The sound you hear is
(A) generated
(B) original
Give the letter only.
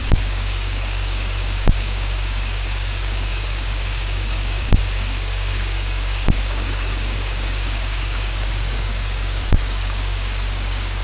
A